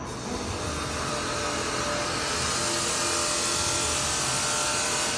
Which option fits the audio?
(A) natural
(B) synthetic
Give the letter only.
A